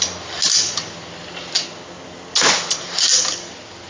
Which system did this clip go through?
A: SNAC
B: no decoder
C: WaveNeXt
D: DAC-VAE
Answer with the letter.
B